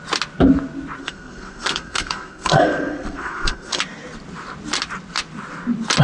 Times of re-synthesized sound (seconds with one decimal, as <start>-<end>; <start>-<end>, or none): 1.0-3.8